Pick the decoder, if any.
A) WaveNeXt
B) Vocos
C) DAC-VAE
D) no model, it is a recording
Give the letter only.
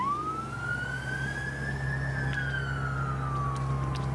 D